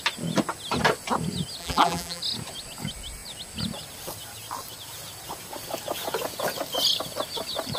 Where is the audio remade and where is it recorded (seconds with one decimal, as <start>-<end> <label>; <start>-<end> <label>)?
0.0-1.6 recorded; 1.6-2.2 remade; 2.2-7.8 recorded